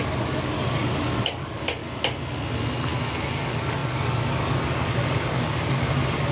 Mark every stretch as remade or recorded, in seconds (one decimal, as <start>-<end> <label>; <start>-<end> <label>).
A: 0.0-1.8 remade; 1.8-3.3 recorded; 3.3-6.3 remade